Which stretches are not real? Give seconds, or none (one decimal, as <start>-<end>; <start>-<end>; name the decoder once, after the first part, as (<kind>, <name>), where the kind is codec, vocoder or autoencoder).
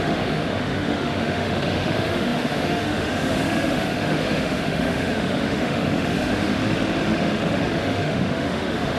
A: 0.0-6.6 (autoencoder, DAC-VAE); 7.1-9.0